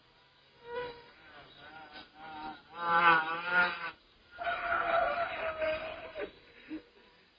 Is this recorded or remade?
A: remade